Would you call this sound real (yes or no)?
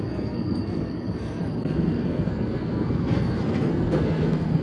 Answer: no